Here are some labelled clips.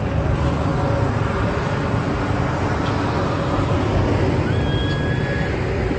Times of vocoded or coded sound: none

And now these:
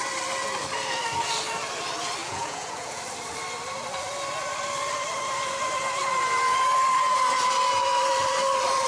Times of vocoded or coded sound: 2.2-3.0 (vocoder, Vocos)

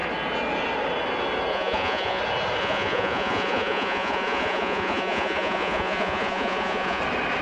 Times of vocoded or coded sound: 1.5-2.2 (vocoder, Vocos); 2.6-7.0